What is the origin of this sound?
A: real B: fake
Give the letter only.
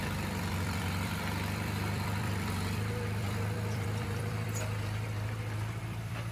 B